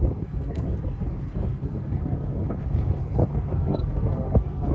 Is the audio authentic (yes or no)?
no